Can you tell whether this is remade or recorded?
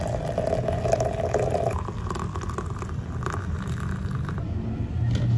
recorded